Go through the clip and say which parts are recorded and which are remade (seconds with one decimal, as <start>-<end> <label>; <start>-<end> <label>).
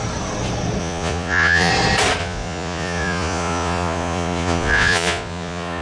0.0-0.8 recorded; 0.8-1.7 remade; 1.7-2.2 recorded; 2.2-5.8 remade